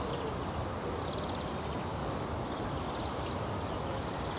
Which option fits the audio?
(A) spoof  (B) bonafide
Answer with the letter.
B